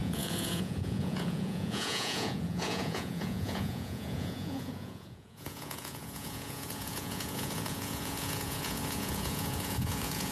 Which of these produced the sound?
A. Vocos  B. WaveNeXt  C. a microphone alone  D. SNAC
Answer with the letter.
A